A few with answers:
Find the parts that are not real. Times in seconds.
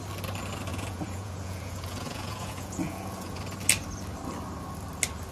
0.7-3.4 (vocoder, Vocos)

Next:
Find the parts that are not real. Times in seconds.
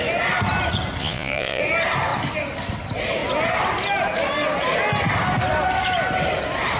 1.0-1.6 (vocoder, Vocos)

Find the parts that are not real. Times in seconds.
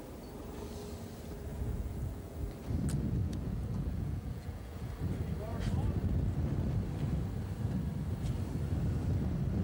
1.5-2.4 (vocoder, Vocos); 3.2-4.9